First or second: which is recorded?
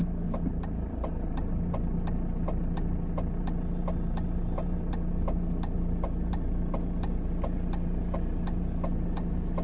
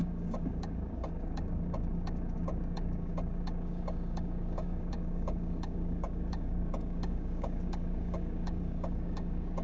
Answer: first